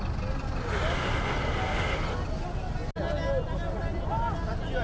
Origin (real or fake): real